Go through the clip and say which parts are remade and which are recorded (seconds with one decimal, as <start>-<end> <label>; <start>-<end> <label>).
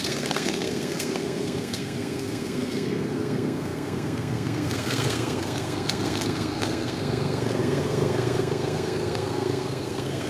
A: 0.0-10.3 remade